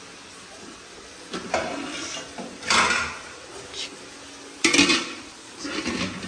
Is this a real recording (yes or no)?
yes